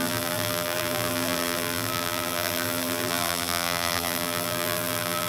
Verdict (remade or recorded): remade